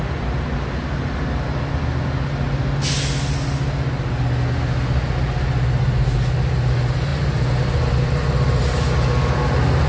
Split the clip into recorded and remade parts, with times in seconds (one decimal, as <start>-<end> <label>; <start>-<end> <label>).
0.0-9.9 recorded